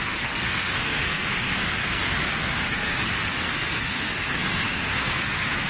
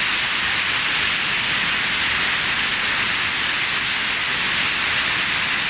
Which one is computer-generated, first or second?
first